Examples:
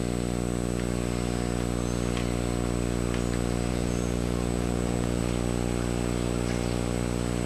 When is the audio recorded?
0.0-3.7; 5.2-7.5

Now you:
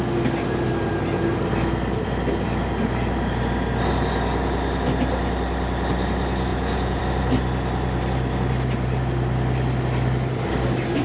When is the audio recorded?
0.0-6.5; 7.0-11.0

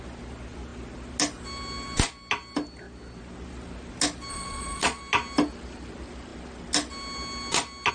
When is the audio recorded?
0.0-4.3; 5.0-7.9

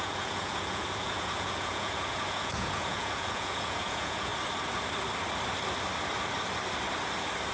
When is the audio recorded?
4.3-7.5

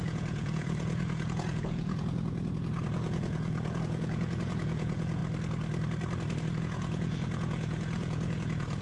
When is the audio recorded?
5.2-6.6